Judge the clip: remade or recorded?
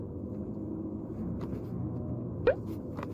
recorded